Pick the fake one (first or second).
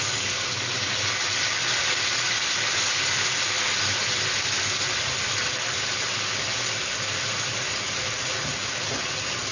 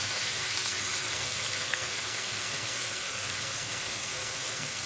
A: second